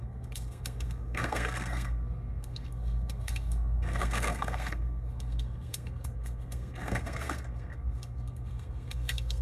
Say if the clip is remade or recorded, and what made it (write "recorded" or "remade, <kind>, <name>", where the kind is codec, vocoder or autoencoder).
remade, codec, SNAC